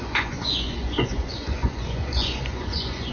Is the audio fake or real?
fake